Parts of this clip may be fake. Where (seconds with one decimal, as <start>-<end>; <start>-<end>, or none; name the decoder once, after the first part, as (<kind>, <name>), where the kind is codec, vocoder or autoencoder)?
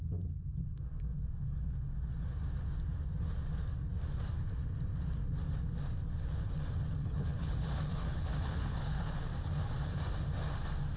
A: 7.0-9.3 (codec, HILCodec)